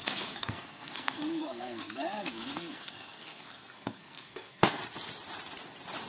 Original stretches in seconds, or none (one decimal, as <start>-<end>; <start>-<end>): 4.8-6.1